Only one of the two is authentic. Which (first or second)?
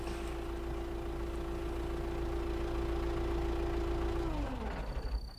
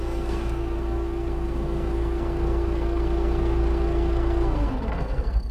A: first